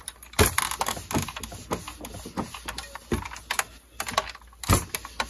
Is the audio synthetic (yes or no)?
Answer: no